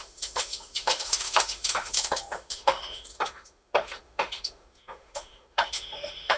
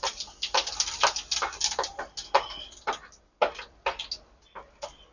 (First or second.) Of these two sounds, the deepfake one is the first